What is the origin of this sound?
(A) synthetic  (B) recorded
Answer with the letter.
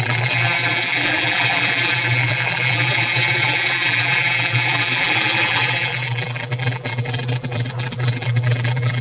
A